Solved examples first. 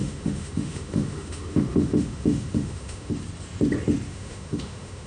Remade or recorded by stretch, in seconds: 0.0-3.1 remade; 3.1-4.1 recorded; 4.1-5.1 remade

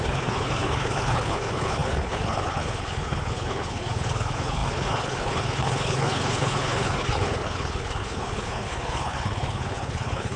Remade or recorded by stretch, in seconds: 0.0-10.4 remade

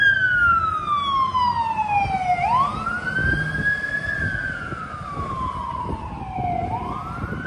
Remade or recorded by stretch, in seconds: 0.0-7.5 recorded

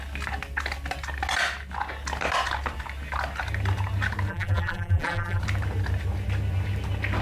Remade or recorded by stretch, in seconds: 0.0-4.3 recorded; 4.3-5.4 remade; 5.4-7.2 recorded

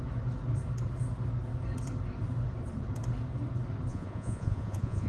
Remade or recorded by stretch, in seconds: 0.0-3.9 recorded; 3.9-5.1 remade